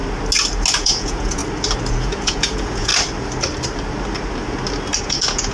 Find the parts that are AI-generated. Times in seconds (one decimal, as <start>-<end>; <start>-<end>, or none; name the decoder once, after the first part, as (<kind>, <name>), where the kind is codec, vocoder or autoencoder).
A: 0.7-1.4 (vocoder, Vocos); 1.9-2.9; 5.0-5.5